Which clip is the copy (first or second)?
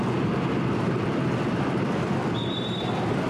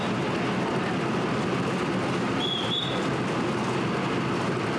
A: first